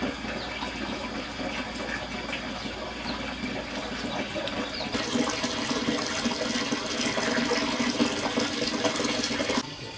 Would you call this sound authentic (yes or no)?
yes